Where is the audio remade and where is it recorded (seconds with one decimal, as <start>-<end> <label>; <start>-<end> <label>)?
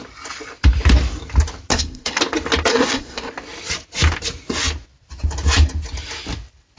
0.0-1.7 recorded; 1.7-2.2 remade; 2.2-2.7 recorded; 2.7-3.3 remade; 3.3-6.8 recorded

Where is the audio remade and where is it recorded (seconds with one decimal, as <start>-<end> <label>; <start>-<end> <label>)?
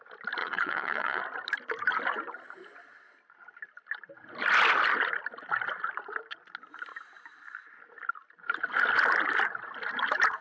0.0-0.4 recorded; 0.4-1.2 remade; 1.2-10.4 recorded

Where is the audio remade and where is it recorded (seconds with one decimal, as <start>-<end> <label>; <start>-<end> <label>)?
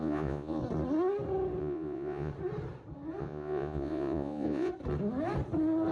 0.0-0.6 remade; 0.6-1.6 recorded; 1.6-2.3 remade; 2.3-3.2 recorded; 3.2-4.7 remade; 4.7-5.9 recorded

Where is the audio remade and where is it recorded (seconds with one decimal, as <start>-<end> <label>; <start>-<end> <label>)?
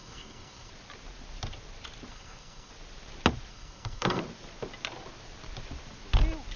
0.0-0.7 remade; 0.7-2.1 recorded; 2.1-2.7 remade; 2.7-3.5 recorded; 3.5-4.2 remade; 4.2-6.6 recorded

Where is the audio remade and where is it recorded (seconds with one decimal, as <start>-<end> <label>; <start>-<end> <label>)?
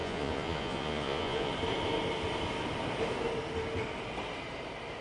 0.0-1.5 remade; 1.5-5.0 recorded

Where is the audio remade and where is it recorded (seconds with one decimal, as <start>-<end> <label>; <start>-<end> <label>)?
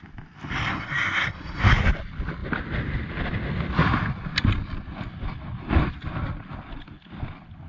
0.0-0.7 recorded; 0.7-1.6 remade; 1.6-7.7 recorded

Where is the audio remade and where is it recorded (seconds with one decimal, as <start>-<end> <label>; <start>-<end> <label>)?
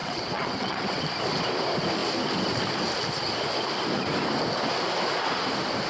0.0-1.0 remade; 1.0-5.9 recorded